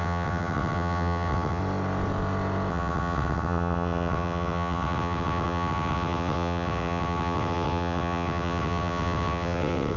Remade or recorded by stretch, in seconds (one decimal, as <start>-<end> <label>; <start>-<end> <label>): 0.0-1.6 remade; 1.6-2.7 recorded; 2.7-10.0 remade